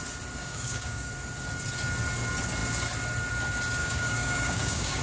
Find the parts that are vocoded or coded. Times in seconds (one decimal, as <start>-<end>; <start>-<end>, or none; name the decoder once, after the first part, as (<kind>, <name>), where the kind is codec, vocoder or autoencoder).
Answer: 0.4-1.1 (codec, DAC); 3.8-5.0